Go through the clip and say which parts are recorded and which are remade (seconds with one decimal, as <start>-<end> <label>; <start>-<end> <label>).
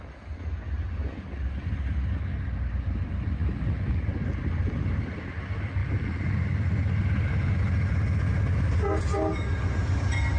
0.0-10.4 recorded